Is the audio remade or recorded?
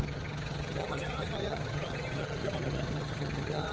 remade